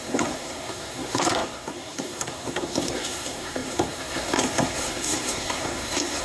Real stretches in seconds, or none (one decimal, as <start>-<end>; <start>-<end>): none